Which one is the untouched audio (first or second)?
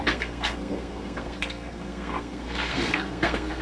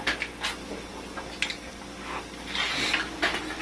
second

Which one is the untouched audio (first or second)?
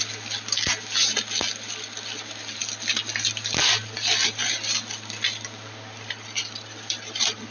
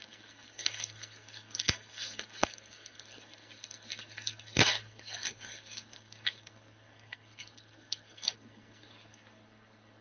first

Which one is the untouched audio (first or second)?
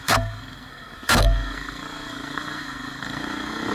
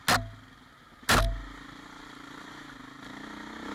second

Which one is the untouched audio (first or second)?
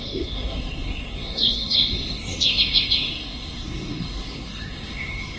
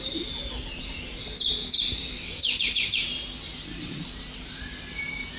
second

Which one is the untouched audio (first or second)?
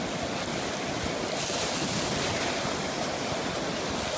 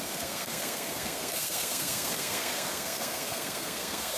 first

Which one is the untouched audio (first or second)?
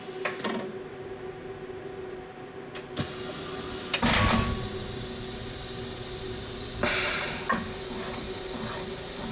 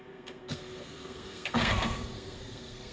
first